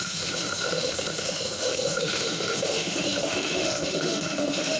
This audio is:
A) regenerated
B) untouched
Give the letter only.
A